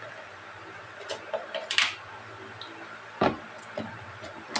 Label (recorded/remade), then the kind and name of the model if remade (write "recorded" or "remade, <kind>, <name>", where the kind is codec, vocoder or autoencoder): recorded